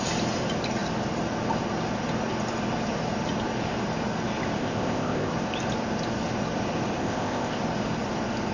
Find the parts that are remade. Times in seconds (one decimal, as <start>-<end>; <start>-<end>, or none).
4.6-5.3; 7.0-7.6